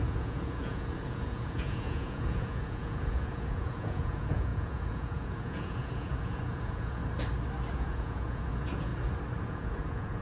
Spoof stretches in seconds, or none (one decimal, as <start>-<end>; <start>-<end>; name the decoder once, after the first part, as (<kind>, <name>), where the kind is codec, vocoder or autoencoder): 0.0-7.0 (vocoder, Vocos); 7.7-8.9; 9.4-10.2